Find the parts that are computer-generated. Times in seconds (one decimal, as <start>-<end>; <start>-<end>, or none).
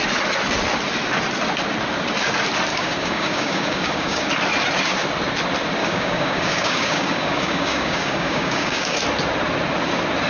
2.7-4.3; 5.8-9.0